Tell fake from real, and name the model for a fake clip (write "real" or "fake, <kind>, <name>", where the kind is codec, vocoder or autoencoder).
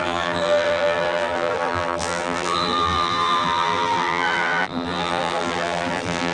fake, vocoder, BigVGAN v2